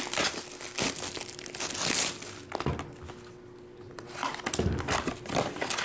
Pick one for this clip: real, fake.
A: real